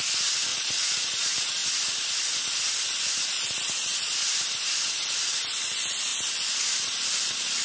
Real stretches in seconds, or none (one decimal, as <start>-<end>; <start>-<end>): 0.0-0.5; 1.1-7.6